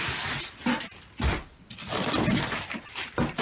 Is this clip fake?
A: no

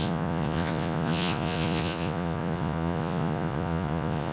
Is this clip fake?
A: yes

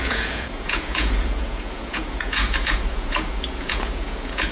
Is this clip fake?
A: yes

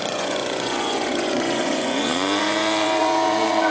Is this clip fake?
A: yes